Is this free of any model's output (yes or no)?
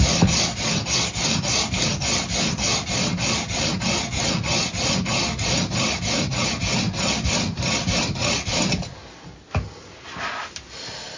yes